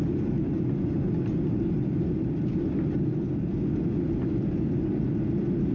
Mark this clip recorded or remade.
recorded